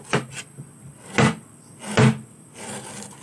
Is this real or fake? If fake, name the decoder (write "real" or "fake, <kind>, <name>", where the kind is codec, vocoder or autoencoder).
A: real